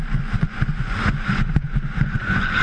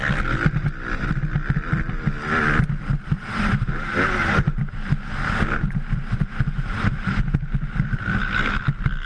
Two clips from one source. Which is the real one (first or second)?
second